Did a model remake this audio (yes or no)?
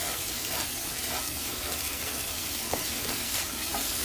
yes